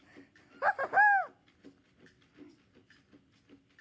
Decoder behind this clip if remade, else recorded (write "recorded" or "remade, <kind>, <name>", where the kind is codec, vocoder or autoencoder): recorded